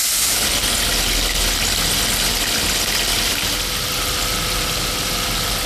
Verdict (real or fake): real